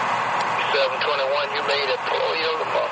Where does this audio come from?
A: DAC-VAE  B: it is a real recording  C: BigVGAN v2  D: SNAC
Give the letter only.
B